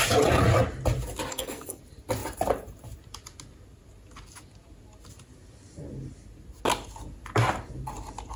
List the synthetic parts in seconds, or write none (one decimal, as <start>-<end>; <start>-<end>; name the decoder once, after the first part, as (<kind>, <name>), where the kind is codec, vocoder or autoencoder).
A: 1.3-1.8 (codec, SNAC)